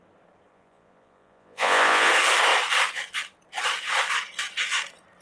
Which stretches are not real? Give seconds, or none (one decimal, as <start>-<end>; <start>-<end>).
0.5-2.1